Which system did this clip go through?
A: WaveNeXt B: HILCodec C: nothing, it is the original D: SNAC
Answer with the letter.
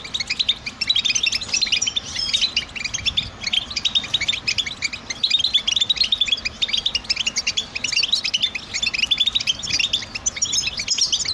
C